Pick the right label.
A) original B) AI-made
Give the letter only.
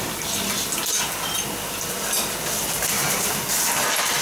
A